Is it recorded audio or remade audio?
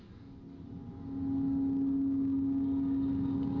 recorded